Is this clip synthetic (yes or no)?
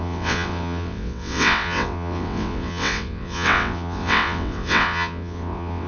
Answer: yes